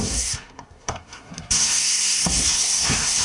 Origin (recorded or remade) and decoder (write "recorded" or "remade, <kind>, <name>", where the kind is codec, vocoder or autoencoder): remade, codec, SNAC